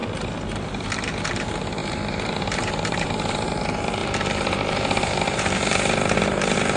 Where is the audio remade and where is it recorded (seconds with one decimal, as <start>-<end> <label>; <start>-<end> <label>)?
0.0-1.3 recorded; 1.3-6.8 remade